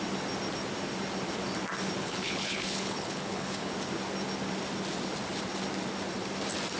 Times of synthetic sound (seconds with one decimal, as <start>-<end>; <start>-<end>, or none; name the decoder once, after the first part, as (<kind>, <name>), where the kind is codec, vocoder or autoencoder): 2.0-3.7 (codec, HILCodec)